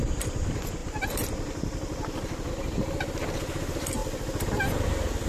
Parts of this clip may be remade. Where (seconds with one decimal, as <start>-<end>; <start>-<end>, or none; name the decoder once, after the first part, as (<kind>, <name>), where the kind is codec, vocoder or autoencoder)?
none